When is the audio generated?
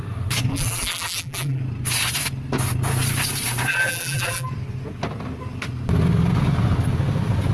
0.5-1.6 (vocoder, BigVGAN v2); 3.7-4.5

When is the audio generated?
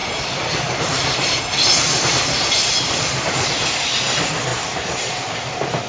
0.0-3.5 (vocoder, BigVGAN v2); 4.5-5.9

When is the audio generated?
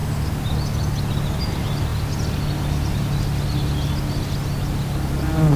none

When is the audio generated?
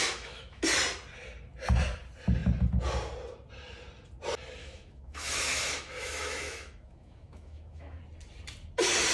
0.0-0.6 (autoencoder, DAC-VAE); 4.6-8.0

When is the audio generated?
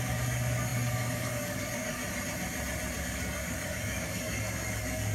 0.0-2.0 (codec, DAC); 3.0-5.1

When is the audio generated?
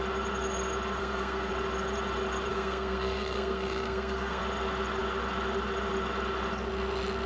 1.0-1.5 (codec, SNAC); 2.5-4.4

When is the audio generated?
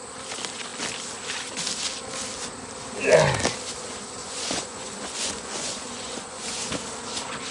4.2-6.7 (vocoder, Vocos)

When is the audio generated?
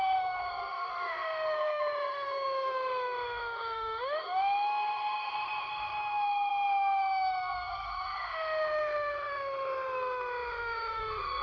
0.0-11.4 (autoencoder, DAC-VAE)